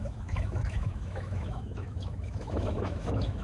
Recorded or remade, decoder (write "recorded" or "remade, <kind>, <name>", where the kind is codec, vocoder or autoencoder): remade, autoencoder, DAC-VAE